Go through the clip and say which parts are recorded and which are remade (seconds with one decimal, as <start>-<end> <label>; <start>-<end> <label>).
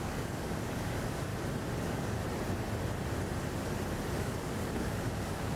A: 0.0-1.3 remade; 1.3-1.8 recorded; 1.8-2.2 remade; 2.2-4.2 recorded; 4.2-5.6 remade